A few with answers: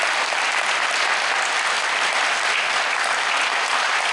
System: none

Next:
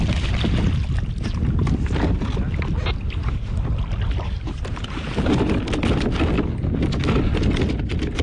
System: none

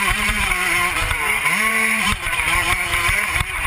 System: vocoder, BigVGAN v2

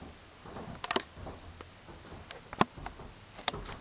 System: none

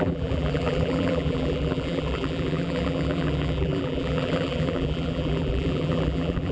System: vocoder, BigVGAN v2